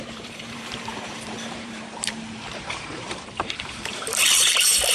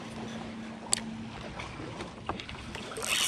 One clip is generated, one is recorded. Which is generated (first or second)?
first